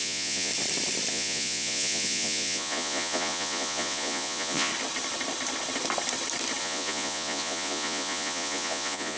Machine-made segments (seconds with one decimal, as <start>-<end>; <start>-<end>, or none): 0.0-0.5; 1.1-4.7; 6.6-9.2